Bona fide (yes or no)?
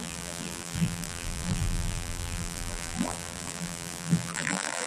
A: no